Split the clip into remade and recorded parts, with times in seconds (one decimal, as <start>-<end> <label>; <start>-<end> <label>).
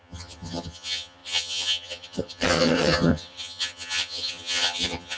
0.0-5.2 remade